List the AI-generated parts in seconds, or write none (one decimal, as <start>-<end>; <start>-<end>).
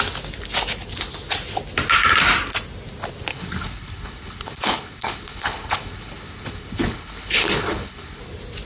3.3-8.2